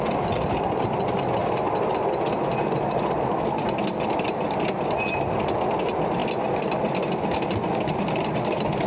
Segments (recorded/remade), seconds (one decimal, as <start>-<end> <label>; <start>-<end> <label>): 0.0-8.9 recorded